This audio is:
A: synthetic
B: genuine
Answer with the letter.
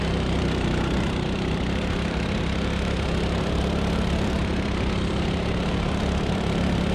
A